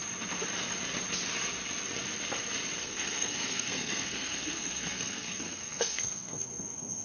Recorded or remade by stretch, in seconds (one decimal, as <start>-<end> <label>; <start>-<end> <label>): 0.0-2.8 recorded; 2.8-7.0 remade